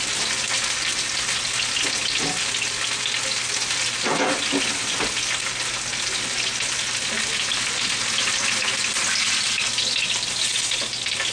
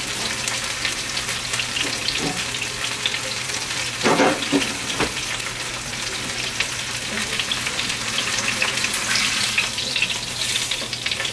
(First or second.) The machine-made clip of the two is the second